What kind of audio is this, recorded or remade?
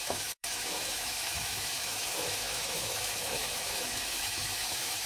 remade